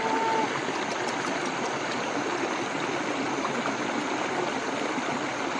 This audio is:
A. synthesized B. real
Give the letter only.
B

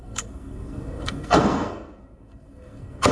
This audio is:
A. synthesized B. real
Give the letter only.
A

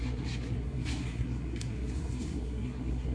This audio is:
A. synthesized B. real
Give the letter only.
A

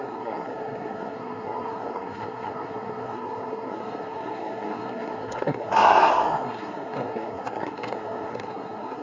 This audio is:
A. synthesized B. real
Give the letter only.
A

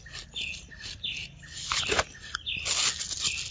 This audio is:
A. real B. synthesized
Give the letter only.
A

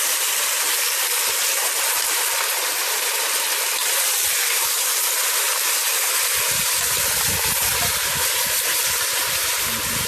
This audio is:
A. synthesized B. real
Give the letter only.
B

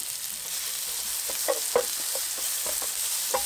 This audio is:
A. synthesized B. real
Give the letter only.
B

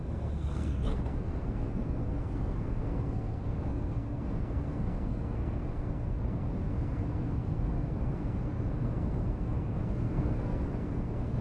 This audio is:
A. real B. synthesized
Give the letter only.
B